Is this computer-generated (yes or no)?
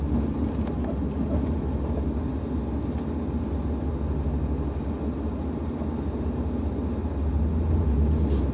no